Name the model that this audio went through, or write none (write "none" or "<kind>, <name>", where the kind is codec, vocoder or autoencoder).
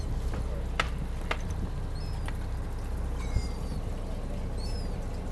none